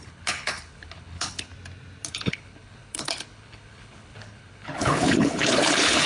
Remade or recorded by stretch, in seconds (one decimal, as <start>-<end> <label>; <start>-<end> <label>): 0.0-1.5 remade; 1.5-2.1 recorded; 2.1-6.1 remade